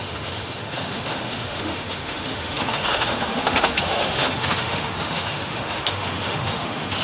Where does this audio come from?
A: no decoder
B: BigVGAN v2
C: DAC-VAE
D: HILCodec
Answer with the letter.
C